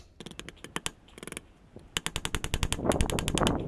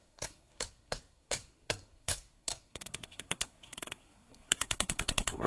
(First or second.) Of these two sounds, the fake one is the second